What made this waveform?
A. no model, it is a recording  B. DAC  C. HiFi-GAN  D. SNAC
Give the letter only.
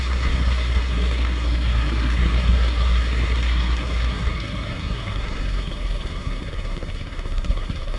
D